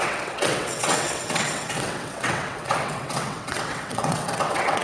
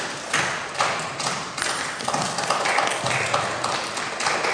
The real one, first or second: second